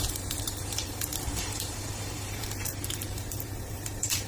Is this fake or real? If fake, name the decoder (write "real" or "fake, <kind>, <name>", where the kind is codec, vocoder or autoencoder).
fake, vocoder, BigVGAN v2